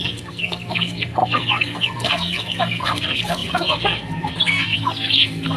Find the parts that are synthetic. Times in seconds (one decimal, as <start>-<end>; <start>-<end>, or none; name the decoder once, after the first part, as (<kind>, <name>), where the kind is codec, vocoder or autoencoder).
0.0-5.6 (codec, SNAC)